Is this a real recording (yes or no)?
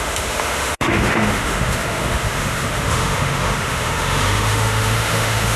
no